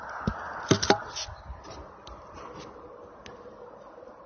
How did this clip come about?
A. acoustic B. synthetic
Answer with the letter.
A